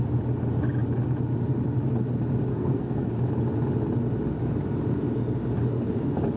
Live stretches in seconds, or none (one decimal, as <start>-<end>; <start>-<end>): 0.0-2.5; 3.1-6.4